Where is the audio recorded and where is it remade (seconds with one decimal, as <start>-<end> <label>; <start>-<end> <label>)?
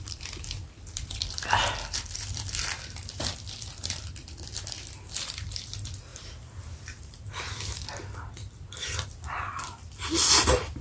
0.0-10.8 remade